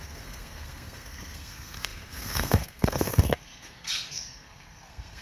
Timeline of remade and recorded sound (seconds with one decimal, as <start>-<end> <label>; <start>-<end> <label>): 0.0-5.2 remade

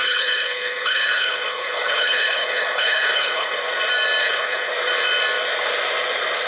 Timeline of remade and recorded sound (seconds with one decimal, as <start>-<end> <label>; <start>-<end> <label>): 0.0-3.6 remade; 3.6-4.2 recorded; 4.2-4.7 remade; 4.7-6.5 recorded